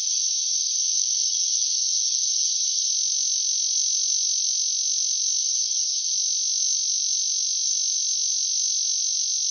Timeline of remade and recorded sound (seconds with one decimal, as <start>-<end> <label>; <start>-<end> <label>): 0.0-2.9 remade; 2.9-5.4 recorded; 5.4-6.1 remade; 6.1-9.5 recorded